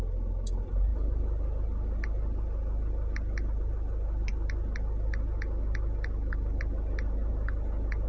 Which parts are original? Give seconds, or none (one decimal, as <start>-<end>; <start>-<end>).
0.0-8.1